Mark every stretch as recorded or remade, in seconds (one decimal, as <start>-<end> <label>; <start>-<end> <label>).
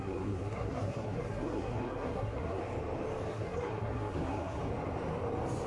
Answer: 0.0-2.6 remade; 2.6-3.3 recorded; 3.3-4.6 remade; 4.6-5.7 recorded